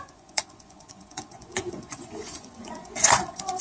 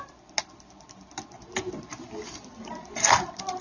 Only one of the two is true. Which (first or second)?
second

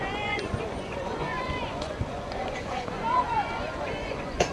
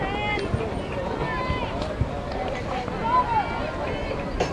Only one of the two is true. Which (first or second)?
second